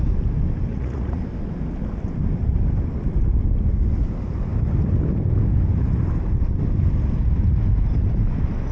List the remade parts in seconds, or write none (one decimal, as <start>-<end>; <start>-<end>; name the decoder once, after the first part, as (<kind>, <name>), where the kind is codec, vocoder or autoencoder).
0.7-1.2 (vocoder, Vocos)